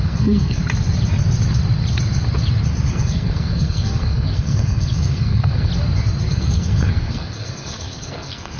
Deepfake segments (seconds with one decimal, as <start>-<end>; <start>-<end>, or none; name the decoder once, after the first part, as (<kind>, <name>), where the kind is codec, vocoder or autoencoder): 0.0-0.6 (codec, SNAC); 2.9-5.7; 6.3-8.6